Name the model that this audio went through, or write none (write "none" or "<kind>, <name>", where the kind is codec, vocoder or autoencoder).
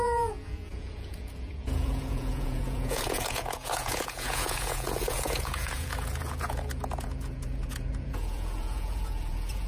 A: vocoder, Vocos